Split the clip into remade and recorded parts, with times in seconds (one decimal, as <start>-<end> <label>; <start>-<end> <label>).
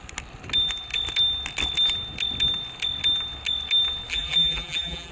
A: 0.0-4.1 recorded; 4.1-5.1 remade